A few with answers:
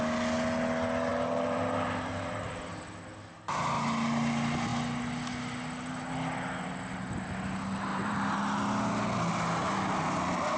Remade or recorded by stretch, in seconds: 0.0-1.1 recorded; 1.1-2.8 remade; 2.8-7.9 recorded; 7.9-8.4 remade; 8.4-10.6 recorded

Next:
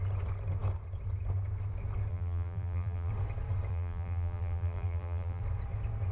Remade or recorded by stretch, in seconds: 0.0-2.1 recorded; 2.1-3.1 remade; 3.1-3.7 recorded; 3.7-5.4 remade; 5.4-6.1 recorded